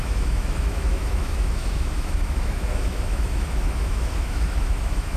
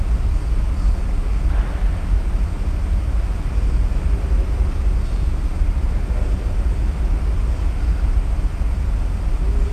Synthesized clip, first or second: first